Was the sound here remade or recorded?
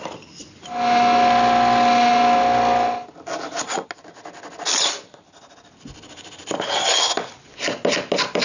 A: recorded